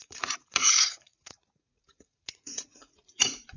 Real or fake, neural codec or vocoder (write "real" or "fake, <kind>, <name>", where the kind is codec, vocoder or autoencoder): fake, vocoder, Vocos